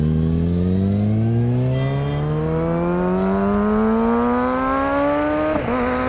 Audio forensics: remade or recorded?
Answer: recorded